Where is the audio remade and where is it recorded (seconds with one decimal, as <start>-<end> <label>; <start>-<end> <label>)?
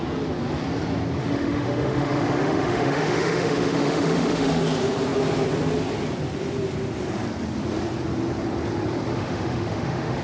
0.0-1.2 recorded; 1.2-4.6 remade; 4.6-9.1 recorded; 9.1-10.2 remade